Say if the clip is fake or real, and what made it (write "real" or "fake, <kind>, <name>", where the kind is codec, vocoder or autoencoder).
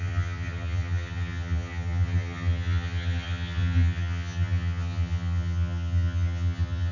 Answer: fake, vocoder, HiFi-GAN